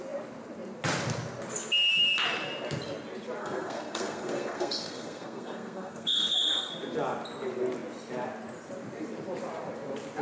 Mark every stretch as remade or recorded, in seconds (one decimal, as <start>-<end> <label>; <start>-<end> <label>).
0.0-3.4 recorded; 3.4-6.7 remade; 6.7-10.2 recorded